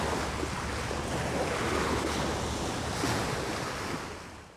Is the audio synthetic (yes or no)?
no